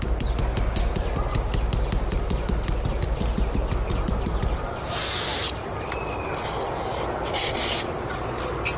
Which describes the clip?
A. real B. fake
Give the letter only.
A